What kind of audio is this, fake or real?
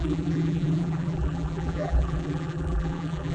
fake